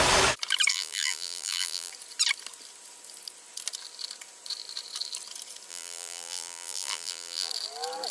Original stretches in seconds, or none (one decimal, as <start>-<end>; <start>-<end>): 0.0-0.7; 1.9-5.7; 7.5-8.1